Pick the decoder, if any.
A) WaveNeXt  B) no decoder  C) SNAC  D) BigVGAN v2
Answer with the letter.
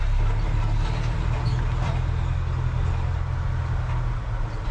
B